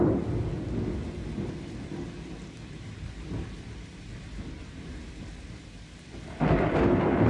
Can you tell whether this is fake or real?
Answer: real